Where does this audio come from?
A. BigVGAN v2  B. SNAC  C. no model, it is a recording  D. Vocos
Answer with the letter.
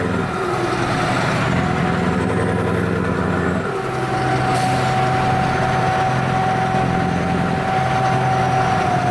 C